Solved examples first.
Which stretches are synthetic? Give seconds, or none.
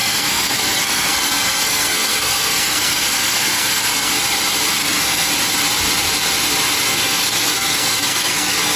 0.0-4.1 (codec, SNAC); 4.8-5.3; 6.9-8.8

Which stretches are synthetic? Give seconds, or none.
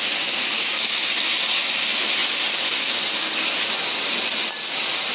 none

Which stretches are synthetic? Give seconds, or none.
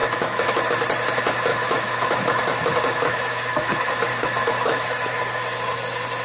0.0-0.6 (autoencoder, DAC-VAE); 1.5-5.2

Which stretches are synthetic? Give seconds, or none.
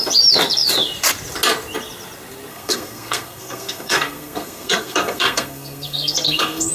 2.5-6.7 (codec, SNAC)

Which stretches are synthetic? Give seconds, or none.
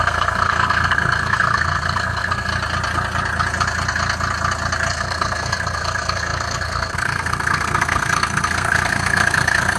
0.0-2.5 (codec, SNAC); 4.9-9.8